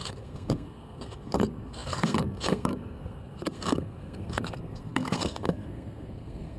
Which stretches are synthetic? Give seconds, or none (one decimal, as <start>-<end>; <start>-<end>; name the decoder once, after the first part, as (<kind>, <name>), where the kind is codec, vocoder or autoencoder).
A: 0.0-6.6 (codec, SNAC)